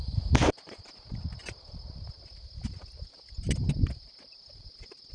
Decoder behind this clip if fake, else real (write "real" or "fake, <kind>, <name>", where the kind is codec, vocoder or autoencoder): real